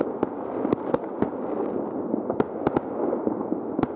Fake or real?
real